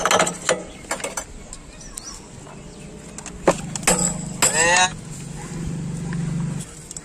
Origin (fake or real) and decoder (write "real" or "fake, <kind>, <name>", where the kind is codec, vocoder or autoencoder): real